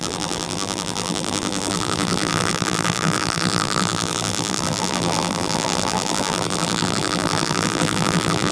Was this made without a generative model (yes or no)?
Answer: no